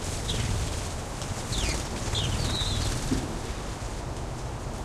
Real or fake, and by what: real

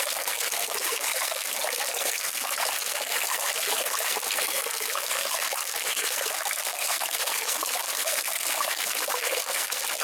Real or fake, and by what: fake, codec, SNAC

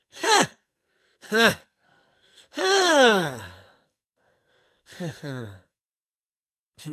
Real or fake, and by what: fake, codec, SNAC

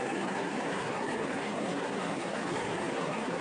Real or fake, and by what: fake, codec, SNAC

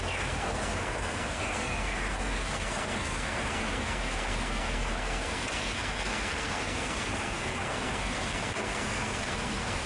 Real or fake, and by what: fake, codec, SNAC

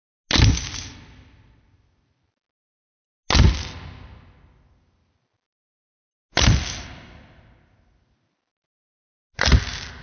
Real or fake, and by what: real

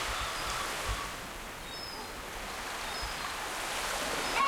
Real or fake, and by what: real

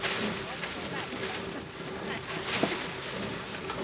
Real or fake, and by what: real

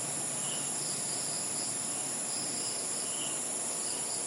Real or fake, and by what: real